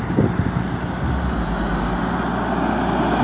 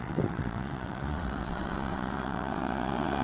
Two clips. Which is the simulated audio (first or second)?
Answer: second